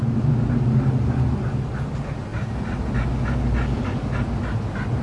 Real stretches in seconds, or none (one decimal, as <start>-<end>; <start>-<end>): 0.0-5.0